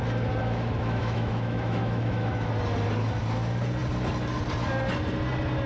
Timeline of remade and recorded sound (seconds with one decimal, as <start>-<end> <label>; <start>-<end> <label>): 0.0-0.4 recorded; 0.4-2.5 remade; 2.5-5.7 recorded